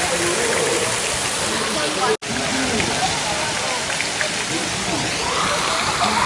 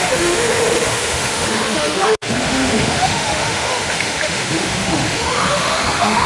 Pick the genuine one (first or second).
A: first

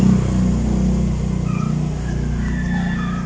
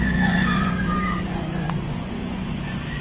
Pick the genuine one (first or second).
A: first